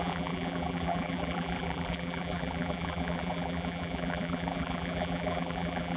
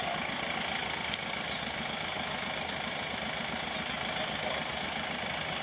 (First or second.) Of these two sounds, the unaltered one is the second